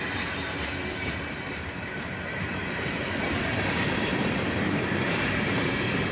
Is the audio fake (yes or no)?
yes